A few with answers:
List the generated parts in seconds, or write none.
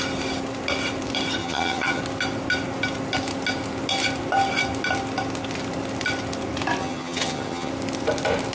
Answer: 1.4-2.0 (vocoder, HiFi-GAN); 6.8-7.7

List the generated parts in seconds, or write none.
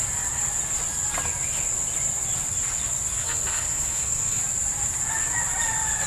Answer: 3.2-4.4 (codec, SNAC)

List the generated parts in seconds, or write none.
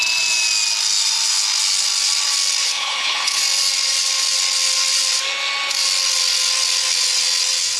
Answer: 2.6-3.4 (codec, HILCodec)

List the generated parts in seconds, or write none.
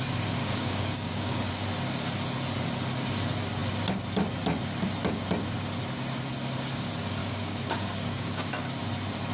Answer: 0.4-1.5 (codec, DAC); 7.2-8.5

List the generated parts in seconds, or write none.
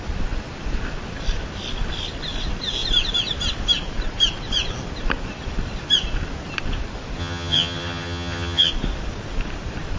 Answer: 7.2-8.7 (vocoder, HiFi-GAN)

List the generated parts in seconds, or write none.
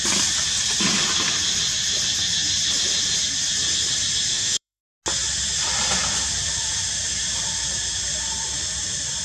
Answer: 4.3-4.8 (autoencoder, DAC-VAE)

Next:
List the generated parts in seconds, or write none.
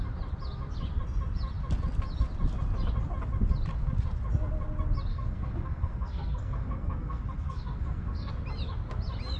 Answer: 5.1-8.3 (codec, SNAC)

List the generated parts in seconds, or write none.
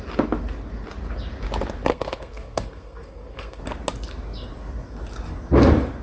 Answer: 1.9-3.6 (codec, SNAC)